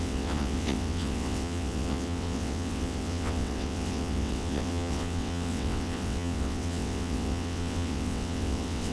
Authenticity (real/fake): fake